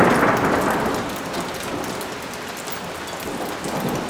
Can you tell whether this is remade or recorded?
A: recorded